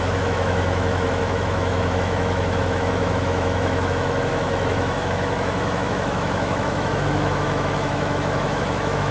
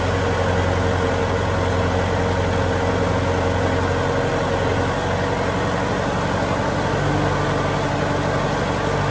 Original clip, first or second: second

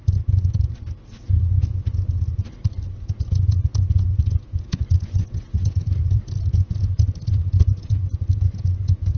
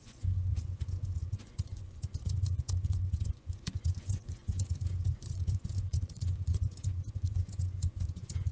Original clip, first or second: first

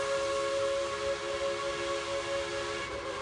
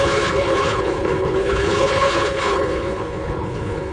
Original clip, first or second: first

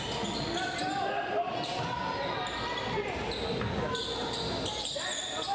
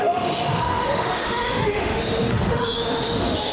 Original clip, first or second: first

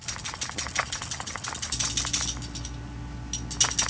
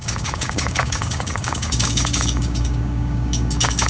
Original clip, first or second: first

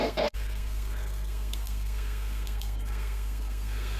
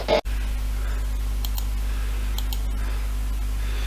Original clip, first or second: second